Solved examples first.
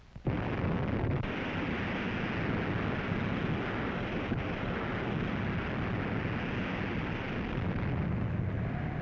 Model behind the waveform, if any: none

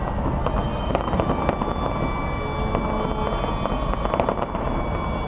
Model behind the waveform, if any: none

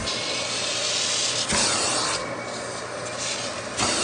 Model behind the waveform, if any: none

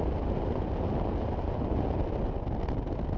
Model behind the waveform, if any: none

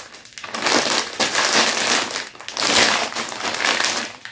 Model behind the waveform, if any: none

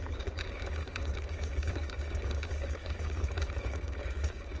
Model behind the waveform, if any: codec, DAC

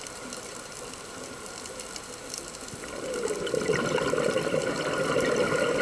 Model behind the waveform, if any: none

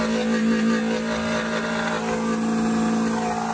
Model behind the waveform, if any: none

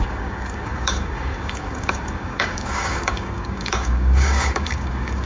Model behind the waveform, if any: codec, DAC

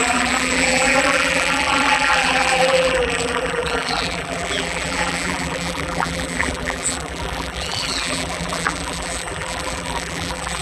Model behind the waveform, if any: vocoder, BigVGAN v2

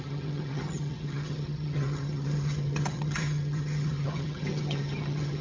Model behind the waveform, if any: vocoder, HiFi-GAN